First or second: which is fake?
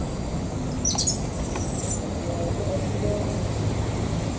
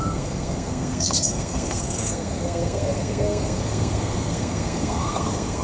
second